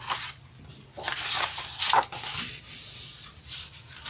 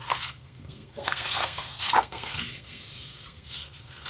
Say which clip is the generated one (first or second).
second